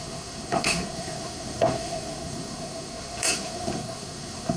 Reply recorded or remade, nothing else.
remade